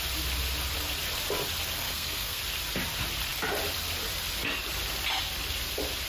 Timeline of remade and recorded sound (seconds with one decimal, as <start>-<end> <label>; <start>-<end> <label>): 0.0-1.8 recorded; 1.8-2.4 remade; 2.4-6.1 recorded